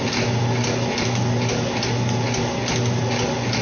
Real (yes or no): yes